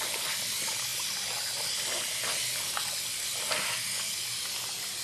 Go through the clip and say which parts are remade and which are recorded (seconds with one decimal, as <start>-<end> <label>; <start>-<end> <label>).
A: 0.0-5.0 recorded